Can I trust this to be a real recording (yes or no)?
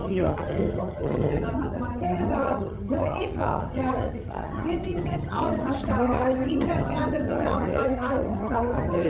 no